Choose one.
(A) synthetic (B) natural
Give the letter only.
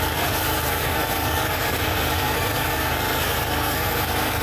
A